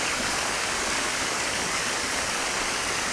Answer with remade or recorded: remade